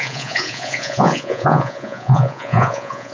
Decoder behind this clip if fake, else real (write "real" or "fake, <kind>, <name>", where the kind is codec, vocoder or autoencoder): fake, vocoder, Vocos